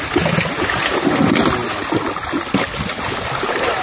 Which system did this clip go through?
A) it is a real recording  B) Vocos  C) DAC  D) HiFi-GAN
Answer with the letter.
A